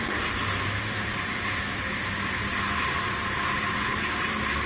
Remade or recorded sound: recorded